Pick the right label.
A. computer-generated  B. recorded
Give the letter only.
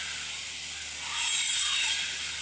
B